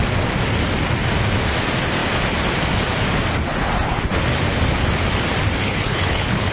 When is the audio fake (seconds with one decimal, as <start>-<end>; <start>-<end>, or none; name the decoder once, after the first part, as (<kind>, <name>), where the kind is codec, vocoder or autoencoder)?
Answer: 5.6-6.5 (codec, HILCodec)